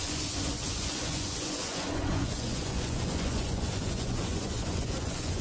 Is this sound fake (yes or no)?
yes